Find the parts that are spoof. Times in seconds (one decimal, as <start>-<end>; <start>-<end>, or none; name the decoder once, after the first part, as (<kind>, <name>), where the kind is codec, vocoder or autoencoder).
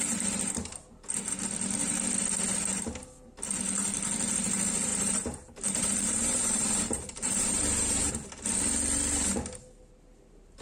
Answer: 4.9-8.1 (vocoder, BigVGAN v2)